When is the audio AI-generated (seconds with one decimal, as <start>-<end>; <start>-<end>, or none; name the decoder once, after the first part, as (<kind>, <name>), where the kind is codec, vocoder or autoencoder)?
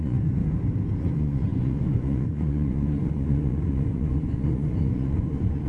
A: 0.0-0.4 (vocoder, Vocos); 1.0-5.7